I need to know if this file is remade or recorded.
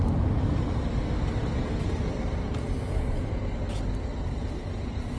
recorded